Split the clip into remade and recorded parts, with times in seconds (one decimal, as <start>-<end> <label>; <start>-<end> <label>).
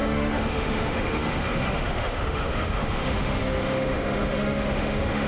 0.0-5.3 remade